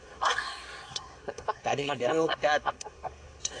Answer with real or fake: fake